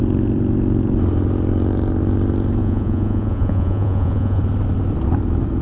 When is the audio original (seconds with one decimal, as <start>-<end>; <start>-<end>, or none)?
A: 0.0-2.6; 4.4-5.6